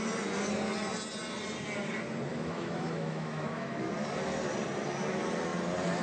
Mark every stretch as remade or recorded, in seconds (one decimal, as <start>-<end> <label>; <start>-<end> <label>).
0.0-2.3 recorded; 2.3-3.9 remade; 3.9-6.0 recorded